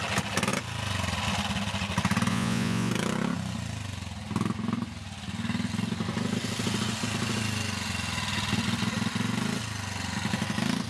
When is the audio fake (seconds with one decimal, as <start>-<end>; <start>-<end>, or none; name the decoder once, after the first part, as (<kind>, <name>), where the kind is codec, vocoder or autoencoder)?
2.3-2.9 (vocoder, Vocos)